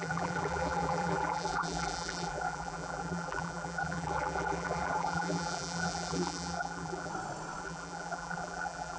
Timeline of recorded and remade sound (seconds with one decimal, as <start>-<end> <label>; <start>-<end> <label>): 0.0-7.1 remade; 7.1-7.6 recorded; 7.6-9.0 remade

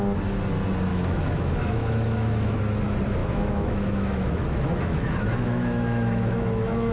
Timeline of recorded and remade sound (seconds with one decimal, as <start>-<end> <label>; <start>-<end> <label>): 0.0-0.9 recorded; 0.9-2.6 remade; 2.6-3.2 recorded; 3.2-6.9 remade

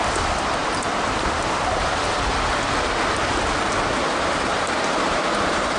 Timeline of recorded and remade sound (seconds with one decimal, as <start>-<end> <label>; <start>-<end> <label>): 0.0-5.8 recorded